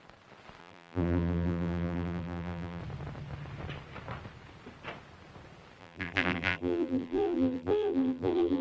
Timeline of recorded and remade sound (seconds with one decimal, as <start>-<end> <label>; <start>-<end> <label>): 0.0-0.6 recorded; 0.6-2.8 remade; 2.8-5.8 recorded; 5.8-8.6 remade